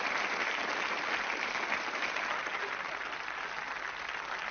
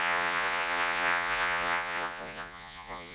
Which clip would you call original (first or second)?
first